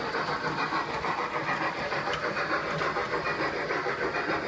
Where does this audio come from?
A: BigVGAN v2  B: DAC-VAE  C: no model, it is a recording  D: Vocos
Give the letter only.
C